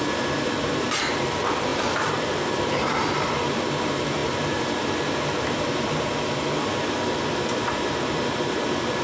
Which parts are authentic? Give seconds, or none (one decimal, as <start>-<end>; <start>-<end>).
none